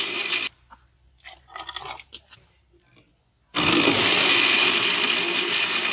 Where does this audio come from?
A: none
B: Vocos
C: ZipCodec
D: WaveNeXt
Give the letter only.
A